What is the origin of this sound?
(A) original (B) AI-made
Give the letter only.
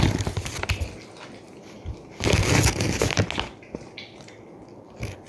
A